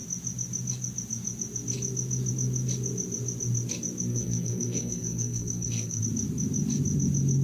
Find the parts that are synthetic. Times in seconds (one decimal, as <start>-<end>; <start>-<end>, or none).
4.1-6.0